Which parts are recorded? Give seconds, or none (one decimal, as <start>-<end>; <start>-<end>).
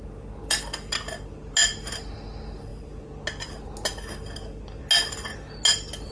0.0-6.1